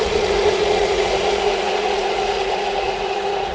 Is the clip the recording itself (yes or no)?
no